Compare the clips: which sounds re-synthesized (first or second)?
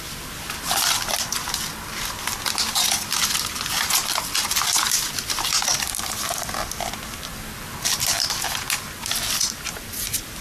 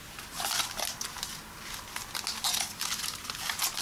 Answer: first